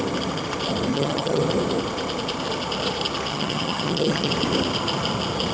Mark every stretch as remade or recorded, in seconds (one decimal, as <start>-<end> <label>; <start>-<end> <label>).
0.0-0.9 recorded; 0.9-1.4 remade; 1.4-3.3 recorded; 3.3-4.3 remade; 4.3-5.5 recorded